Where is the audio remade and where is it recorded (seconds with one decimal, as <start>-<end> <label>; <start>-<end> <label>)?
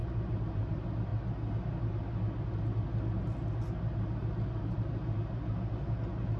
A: 0.0-0.7 remade; 0.7-6.4 recorded